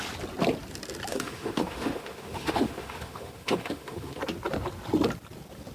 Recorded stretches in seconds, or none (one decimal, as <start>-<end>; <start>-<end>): 0.0-1.1; 4.2-5.7